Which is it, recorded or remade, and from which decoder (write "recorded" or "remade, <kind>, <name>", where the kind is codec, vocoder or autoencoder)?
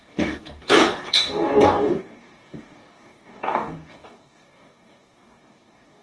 remade, codec, DAC